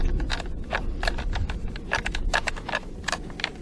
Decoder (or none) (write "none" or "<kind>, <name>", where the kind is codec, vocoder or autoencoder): none